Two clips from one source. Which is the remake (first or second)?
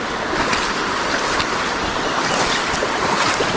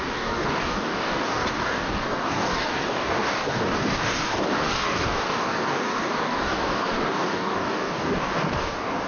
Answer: second